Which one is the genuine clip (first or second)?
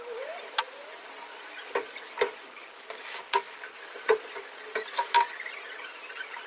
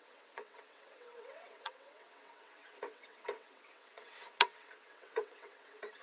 first